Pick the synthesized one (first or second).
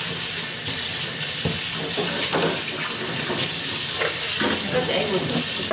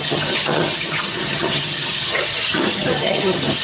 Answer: second